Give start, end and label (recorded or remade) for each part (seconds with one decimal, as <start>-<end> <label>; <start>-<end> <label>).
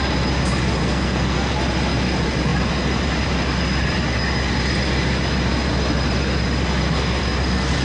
0.0-0.8 recorded; 0.8-1.5 remade; 1.5-7.8 recorded